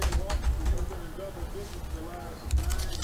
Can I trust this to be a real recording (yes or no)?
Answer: yes